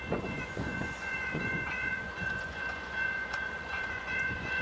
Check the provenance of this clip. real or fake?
fake